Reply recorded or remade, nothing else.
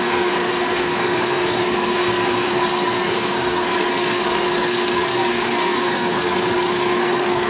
remade